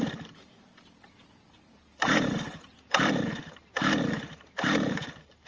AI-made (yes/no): yes